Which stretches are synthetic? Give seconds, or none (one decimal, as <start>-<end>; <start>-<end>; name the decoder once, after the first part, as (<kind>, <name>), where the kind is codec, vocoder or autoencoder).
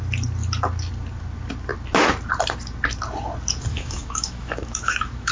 3.7-5.3 (autoencoder, DAC-VAE)